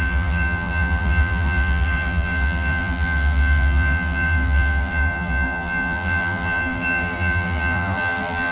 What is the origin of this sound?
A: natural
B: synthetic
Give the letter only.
B